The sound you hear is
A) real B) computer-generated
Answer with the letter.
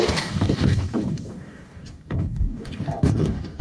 B